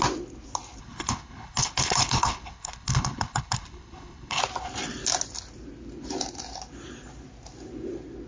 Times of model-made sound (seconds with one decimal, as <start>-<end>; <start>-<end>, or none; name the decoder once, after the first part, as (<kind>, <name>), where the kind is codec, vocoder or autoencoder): 0.8-4.4 (codec, HILCodec)